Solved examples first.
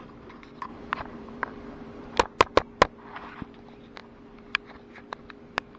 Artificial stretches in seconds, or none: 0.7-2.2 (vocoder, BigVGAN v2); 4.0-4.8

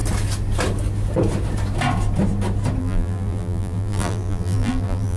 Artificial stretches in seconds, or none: 2.8-5.2 (vocoder, BigVGAN v2)

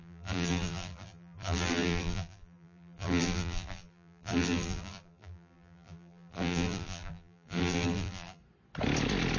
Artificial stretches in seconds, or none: 0.0-8.4 (vocoder, BigVGAN v2)

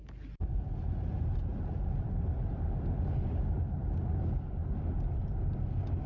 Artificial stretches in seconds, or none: 1.5-5.2 (vocoder, BigVGAN v2)

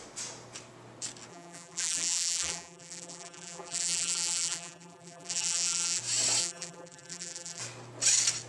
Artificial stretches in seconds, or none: 1.3-6.0 (vocoder, BigVGAN v2); 6.4-7.6

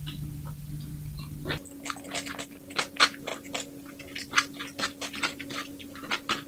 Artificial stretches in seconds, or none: 0.0-0.9 (vocoder, BigVGAN v2); 2.6-3.3; 3.9-6.5